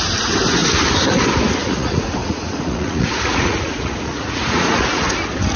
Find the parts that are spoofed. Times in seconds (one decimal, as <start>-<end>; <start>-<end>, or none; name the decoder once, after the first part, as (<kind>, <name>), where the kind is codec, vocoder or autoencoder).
1.6-5.0 (vocoder, Vocos)